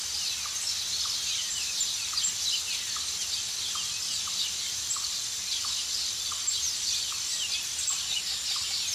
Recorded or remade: recorded